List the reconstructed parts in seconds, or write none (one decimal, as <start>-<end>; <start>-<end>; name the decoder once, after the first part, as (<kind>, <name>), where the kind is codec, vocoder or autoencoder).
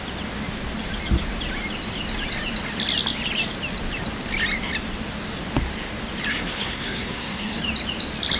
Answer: 6.3-7.6 (codec, SNAC)